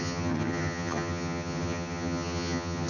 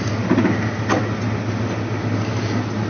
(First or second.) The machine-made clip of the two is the first